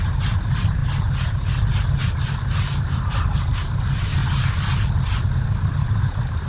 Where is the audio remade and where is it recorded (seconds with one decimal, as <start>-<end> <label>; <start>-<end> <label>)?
0.0-0.8 remade; 0.8-2.8 recorded; 2.8-4.2 remade; 4.2-5.3 recorded; 5.3-6.5 remade